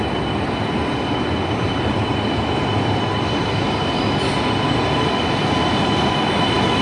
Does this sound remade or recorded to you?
recorded